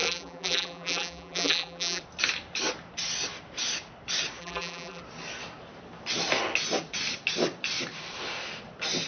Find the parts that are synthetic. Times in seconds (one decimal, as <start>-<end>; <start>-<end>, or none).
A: 0.0-2.0; 4.4-5.0

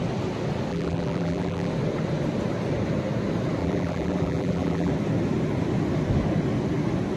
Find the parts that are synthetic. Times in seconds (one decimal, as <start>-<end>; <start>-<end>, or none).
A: 0.7-1.7; 3.6-4.9